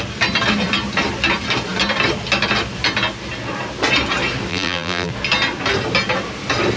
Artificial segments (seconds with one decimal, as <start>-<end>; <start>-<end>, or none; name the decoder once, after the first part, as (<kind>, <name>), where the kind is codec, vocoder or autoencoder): 4.5-5.1 (vocoder, BigVGAN v2)